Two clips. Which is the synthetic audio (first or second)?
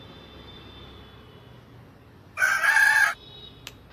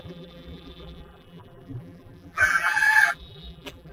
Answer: second